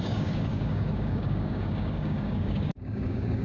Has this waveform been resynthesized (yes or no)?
yes